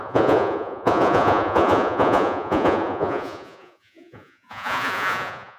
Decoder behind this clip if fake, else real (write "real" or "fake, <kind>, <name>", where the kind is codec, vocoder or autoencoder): fake, vocoder, Vocos